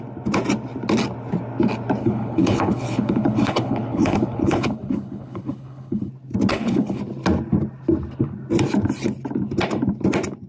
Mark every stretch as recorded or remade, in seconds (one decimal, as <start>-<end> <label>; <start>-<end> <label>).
0.0-2.0 recorded; 2.0-6.1 remade; 6.1-6.5 recorded; 6.5-7.0 remade; 7.0-10.5 recorded